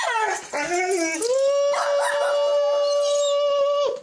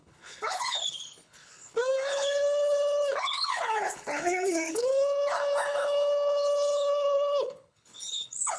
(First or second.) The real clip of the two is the first